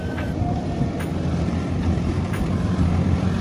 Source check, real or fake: fake